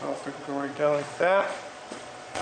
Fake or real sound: fake